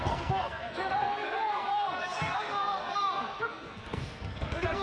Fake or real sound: fake